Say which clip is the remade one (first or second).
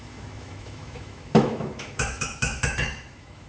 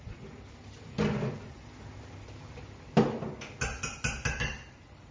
first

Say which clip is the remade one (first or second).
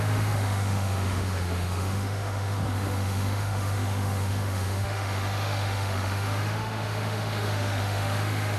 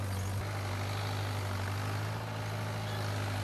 first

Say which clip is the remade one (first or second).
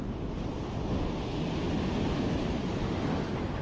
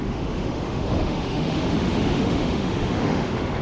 second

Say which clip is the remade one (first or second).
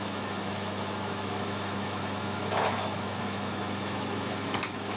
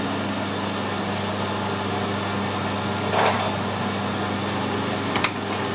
first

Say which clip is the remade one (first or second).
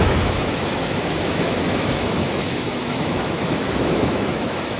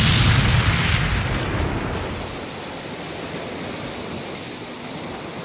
first